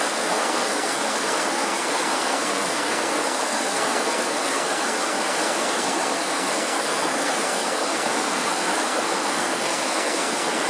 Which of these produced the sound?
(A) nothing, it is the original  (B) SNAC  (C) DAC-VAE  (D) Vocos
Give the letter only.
B